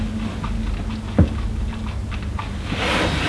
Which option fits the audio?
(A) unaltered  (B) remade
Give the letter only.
A